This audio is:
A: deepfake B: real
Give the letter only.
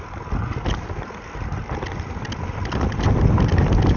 B